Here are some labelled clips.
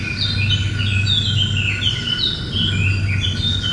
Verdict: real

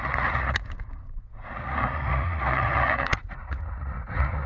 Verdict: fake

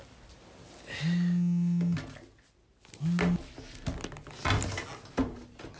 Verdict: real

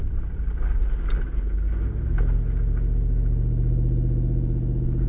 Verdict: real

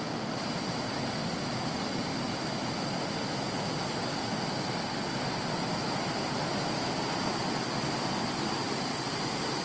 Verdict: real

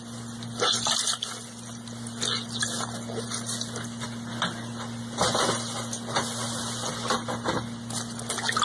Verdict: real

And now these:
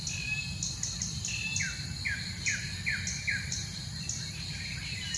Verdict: real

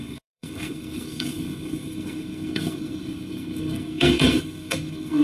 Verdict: fake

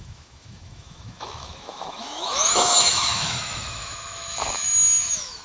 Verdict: fake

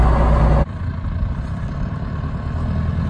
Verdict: real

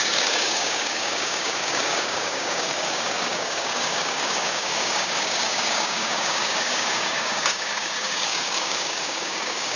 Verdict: fake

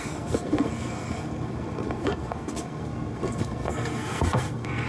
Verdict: fake